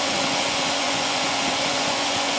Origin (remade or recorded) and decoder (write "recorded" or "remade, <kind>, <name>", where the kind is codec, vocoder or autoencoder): remade, vocoder, Vocos